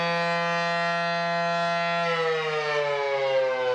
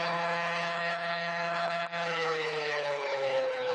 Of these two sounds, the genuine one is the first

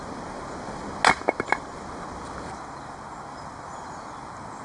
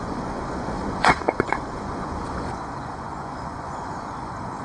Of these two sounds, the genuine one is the first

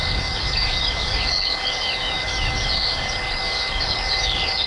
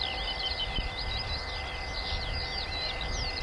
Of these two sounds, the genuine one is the second